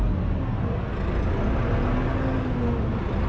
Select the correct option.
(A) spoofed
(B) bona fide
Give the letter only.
B